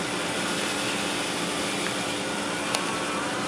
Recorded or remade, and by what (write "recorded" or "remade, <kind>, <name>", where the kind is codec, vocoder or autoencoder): recorded